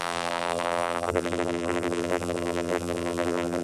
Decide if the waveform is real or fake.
fake